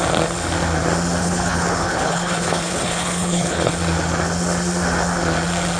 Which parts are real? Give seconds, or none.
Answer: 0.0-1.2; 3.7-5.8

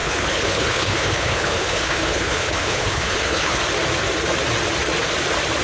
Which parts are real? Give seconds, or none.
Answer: 3.6-5.6

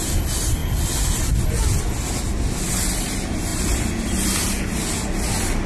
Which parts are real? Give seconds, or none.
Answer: 0.0-5.7

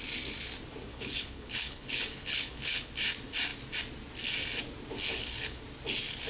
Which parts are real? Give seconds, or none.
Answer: 0.0-0.9; 2.9-5.1; 5.6-6.3

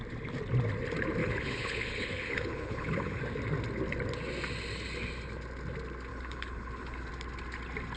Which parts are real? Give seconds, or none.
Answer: 0.0-1.2; 3.2-6.1; 7.1-8.0